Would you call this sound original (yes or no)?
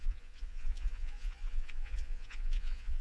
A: no